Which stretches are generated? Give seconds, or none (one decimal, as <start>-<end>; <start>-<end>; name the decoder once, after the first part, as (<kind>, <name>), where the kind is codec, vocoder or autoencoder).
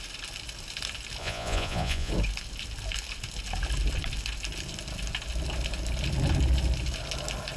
1.2-2.1 (vocoder, Vocos)